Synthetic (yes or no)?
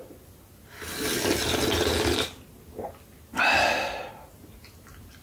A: no